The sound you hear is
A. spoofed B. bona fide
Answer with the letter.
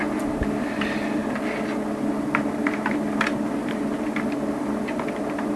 B